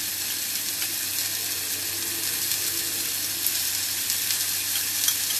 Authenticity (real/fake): real